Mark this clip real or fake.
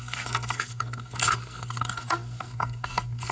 fake